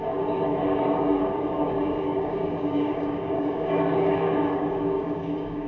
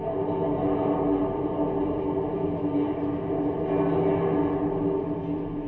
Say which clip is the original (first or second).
second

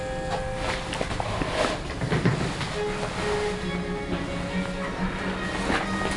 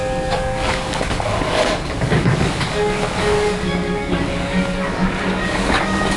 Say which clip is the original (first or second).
first